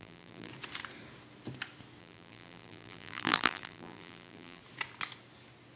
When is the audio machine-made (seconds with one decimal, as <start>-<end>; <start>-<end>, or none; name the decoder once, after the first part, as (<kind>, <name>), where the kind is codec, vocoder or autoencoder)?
0.0-0.5 (vocoder, BigVGAN v2); 2.0-4.6